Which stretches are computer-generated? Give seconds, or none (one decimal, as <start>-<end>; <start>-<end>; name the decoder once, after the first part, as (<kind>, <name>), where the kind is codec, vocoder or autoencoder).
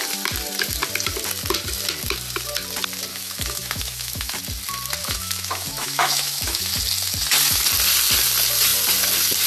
3.1-4.4 (autoencoder, DAC-VAE); 5.0-6.7